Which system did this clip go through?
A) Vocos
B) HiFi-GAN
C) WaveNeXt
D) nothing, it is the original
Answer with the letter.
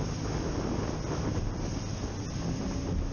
D